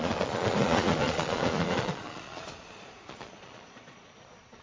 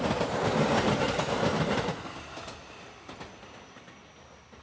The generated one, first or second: first